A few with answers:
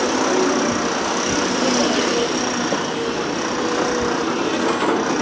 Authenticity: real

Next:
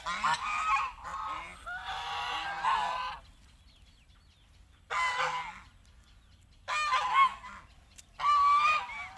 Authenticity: real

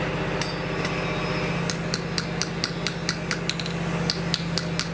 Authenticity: real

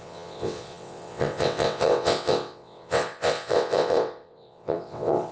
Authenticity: fake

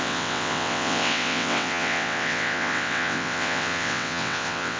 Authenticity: fake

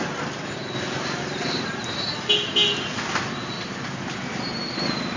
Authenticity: real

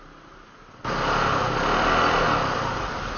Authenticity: real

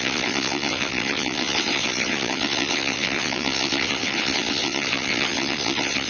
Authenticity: fake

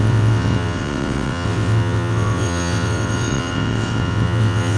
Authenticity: fake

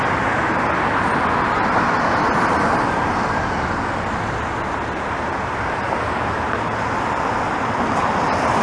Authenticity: real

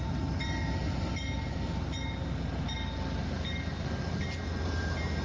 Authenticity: real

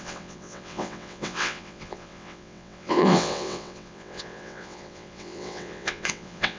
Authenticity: fake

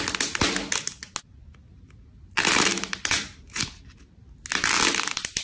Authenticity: real